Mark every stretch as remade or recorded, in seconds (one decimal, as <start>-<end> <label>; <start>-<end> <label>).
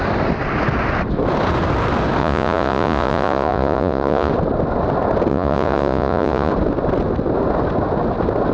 0.0-2.2 recorded; 2.2-4.3 remade; 4.3-5.3 recorded; 5.3-6.5 remade; 6.5-8.5 recorded